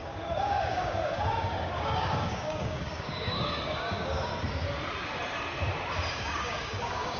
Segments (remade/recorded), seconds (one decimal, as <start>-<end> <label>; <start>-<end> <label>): 0.0-4.3 remade; 4.3-6.1 recorded; 6.1-7.2 remade